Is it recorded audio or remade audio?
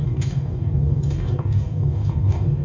remade